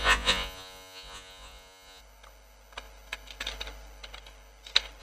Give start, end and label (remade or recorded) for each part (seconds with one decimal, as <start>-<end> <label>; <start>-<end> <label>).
0.0-2.0 remade; 2.0-5.0 recorded